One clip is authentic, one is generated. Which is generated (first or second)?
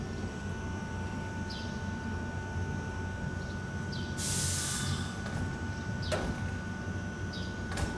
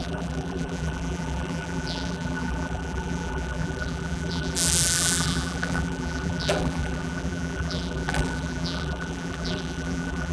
second